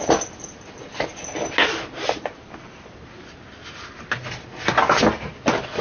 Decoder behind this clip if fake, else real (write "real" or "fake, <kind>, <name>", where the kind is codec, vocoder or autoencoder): real